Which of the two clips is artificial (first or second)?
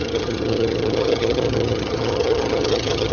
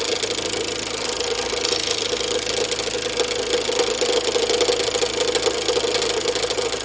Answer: first